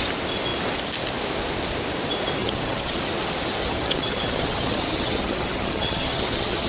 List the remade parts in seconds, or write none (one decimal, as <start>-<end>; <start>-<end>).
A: 2.4-3.0; 3.6-6.7